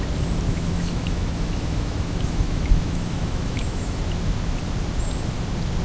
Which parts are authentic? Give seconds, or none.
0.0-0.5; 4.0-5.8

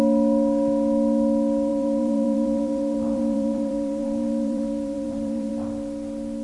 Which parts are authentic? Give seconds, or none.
0.0-1.7; 5.5-6.4